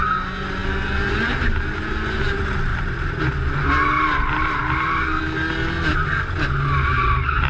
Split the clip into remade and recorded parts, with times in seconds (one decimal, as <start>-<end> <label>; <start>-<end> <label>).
0.0-2.7 recorded; 2.7-3.2 remade; 3.2-7.5 recorded